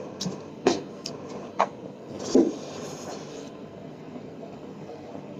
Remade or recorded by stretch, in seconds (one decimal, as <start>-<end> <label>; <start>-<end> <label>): 0.0-0.5 recorded; 0.5-1.1 remade; 1.1-1.5 recorded; 1.5-2.2 remade; 2.2-3.3 recorded; 3.3-5.4 remade